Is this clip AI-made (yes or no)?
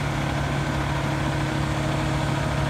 no